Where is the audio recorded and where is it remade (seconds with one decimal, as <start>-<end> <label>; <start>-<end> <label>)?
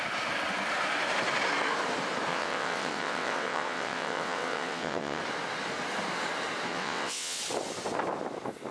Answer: 0.0-2.3 recorded; 2.3-5.2 remade; 5.2-6.7 recorded; 6.7-7.4 remade; 7.4-8.7 recorded